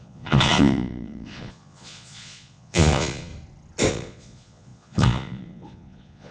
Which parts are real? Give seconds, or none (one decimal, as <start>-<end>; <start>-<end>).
3.3-3.9